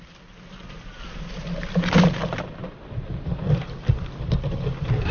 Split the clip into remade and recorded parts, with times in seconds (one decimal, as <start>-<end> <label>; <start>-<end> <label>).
0.0-5.1 recorded